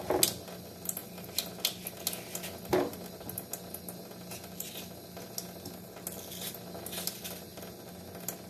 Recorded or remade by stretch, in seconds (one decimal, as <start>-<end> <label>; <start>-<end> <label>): 0.0-8.5 recorded